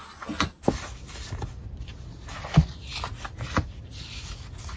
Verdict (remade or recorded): recorded